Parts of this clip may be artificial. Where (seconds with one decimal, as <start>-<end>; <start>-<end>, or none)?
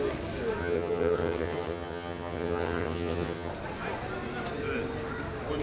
0.6-3.5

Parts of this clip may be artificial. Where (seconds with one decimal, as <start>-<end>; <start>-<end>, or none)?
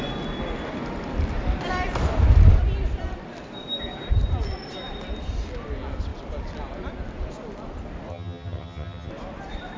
8.1-9.1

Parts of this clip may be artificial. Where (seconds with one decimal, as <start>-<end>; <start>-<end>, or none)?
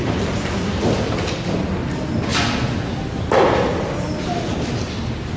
none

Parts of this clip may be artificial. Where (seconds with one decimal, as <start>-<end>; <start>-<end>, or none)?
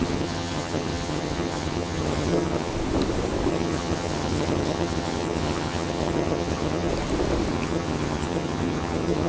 0.0-2.7; 3.5-6.9; 7.5-9.3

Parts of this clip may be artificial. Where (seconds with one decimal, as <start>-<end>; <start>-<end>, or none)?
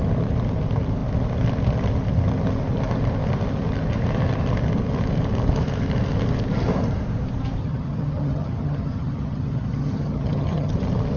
7.6-10.7